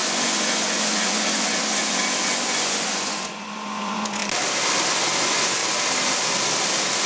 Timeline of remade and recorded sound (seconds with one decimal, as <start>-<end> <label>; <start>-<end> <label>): 0.0-4.2 remade; 4.2-4.9 recorded; 4.9-5.6 remade; 5.6-7.1 recorded